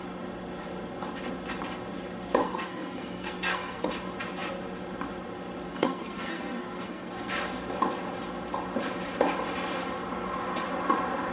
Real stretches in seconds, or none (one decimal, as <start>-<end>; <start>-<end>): 0.0-2.4; 3.9-5.7; 7.3-11.3